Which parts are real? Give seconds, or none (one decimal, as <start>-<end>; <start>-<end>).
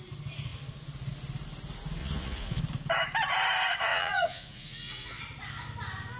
0.0-2.0; 2.6-3.9; 5.2-6.2